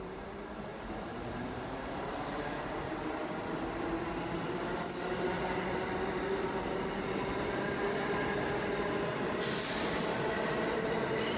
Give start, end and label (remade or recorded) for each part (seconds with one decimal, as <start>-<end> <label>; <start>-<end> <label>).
0.0-0.7 recorded; 0.7-3.8 remade; 3.8-11.4 recorded